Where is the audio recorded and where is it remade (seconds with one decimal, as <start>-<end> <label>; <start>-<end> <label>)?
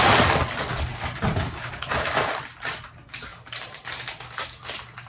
0.0-0.9 recorded; 0.9-2.3 remade; 2.3-3.3 recorded; 3.3-4.0 remade; 4.0-5.1 recorded